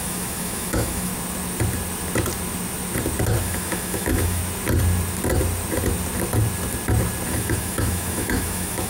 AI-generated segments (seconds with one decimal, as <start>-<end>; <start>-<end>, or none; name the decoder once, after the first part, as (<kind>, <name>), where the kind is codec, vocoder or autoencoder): 0.0-1.1 (autoencoder, DAC-VAE); 3.4-4.4; 7.3-8.9